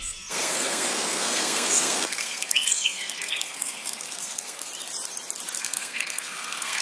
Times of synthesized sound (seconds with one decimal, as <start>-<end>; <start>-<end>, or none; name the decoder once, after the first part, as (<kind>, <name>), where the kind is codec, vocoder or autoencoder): 0.0-4.7 (codec, SNAC); 5.6-6.8